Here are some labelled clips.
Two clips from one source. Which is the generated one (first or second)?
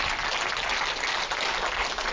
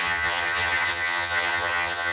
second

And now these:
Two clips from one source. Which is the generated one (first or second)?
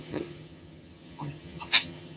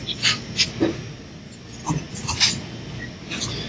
first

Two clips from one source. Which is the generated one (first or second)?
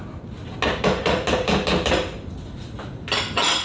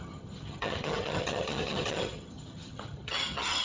second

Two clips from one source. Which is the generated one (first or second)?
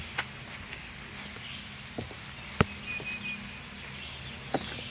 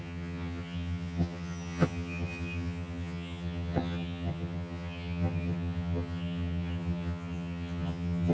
second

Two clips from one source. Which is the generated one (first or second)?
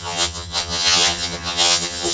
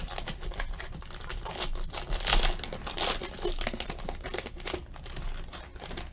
first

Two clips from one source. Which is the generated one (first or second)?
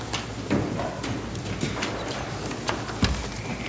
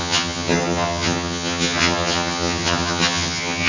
second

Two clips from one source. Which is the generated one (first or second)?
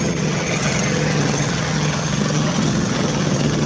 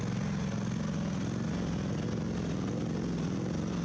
first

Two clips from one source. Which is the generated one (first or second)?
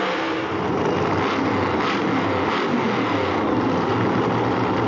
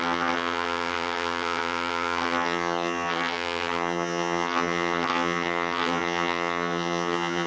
second